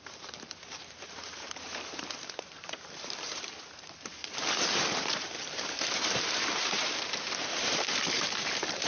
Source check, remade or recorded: remade